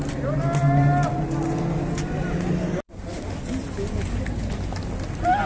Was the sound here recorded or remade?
recorded